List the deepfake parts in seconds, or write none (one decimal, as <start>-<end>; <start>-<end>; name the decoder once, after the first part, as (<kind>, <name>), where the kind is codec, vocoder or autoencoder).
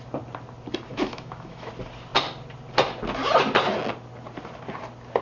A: 0.9-1.7 (autoencoder, DAC-VAE)